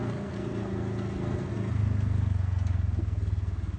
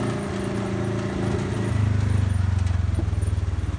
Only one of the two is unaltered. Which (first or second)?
second